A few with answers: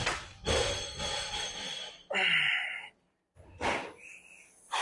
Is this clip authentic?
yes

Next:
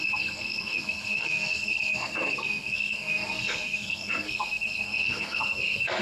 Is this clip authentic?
no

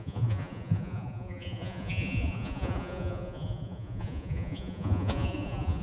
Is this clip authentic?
no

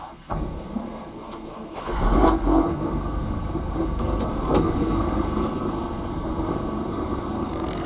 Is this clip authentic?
no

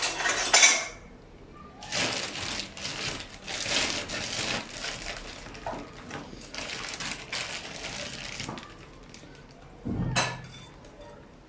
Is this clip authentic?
yes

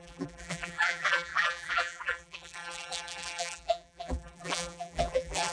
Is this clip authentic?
no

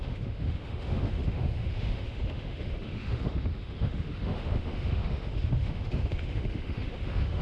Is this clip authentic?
no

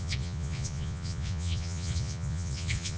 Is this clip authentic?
no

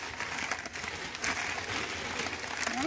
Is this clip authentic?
yes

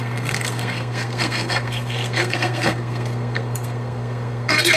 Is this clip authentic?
no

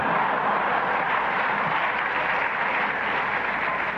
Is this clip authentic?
yes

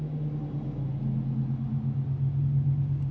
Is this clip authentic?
yes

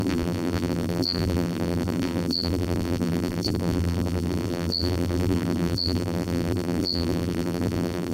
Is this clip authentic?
no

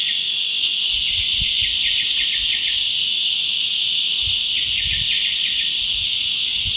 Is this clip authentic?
yes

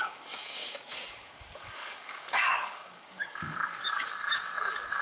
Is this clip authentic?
no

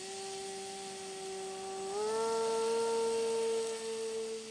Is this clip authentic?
yes